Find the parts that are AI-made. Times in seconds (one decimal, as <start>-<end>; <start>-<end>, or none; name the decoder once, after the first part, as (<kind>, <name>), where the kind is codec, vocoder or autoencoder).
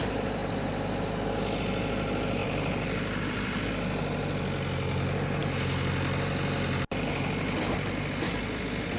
2.4-3.7 (vocoder, BigVGAN v2)